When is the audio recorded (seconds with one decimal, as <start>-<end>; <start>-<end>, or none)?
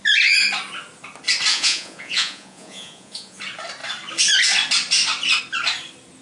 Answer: 0.0-1.5; 3.4-6.2